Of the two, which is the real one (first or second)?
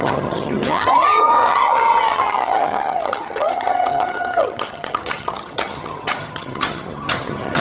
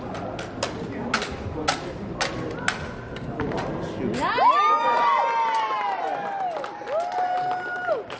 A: second